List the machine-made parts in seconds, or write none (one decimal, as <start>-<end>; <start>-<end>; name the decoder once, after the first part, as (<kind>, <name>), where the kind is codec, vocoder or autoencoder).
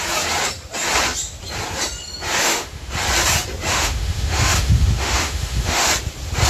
2.4-2.9 (autoencoder, DAC-VAE); 3.7-5.9